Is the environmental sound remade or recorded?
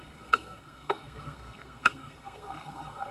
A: remade